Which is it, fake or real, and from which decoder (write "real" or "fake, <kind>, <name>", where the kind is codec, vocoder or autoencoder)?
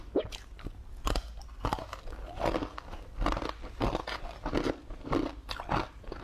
real